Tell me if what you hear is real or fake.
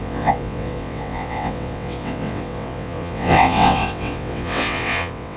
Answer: fake